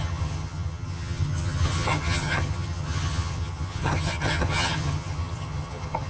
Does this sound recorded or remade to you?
remade